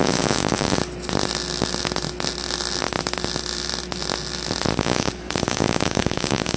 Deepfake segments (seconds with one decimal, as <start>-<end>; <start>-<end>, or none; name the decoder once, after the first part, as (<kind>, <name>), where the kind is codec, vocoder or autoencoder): 0.0-0.8 (codec, DAC); 4.8-6.6